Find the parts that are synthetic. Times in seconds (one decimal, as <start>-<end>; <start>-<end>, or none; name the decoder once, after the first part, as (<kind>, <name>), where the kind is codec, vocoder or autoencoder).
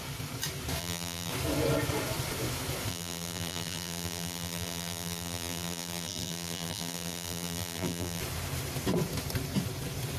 0.8-1.3 (vocoder, BigVGAN v2); 2.9-8.2